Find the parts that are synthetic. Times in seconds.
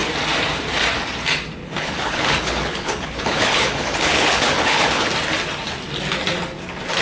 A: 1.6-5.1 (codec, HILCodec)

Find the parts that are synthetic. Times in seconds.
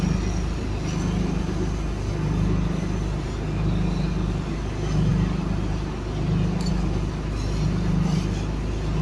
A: none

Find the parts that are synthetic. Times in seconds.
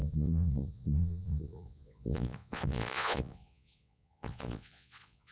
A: 0.0-5.3 (vocoder, Vocos)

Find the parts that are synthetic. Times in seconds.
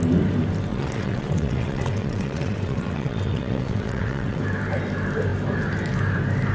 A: 0.7-4.4 (vocoder, WaveNeXt)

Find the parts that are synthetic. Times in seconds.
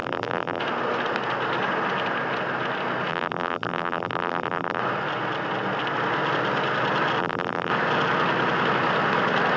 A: 0.0-0.6 (vocoder, BigVGAN v2); 3.1-4.8; 7.2-7.7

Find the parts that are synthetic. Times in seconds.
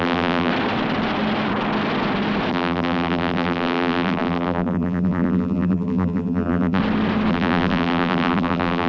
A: 0.0-0.5 (vocoder, BigVGAN v2); 2.5-6.8; 7.3-8.9